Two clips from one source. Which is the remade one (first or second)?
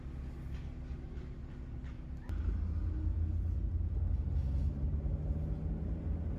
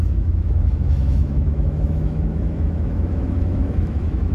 second